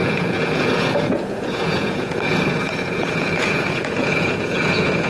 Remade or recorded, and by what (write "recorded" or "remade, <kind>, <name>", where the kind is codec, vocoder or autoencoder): remade, vocoder, Vocos